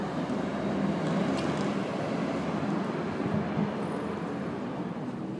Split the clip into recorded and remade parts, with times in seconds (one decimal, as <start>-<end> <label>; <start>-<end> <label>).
0.0-5.4 recorded